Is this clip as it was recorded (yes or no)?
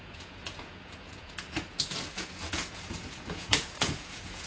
no